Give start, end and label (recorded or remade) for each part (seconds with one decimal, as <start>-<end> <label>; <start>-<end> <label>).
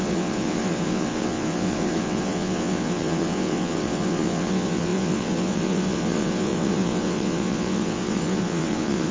0.0-9.1 remade